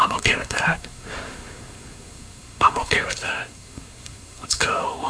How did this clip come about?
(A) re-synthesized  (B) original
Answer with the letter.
A